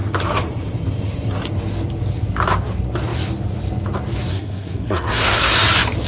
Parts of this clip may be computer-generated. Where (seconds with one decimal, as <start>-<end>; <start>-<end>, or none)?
4.3-5.5